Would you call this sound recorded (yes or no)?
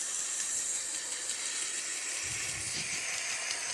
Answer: yes